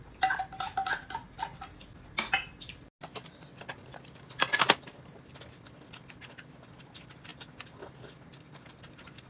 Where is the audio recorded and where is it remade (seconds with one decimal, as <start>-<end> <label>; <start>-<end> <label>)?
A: 0.0-9.3 recorded